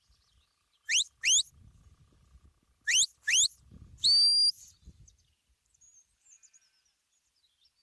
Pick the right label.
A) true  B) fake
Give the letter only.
A